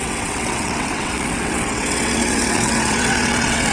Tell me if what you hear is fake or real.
fake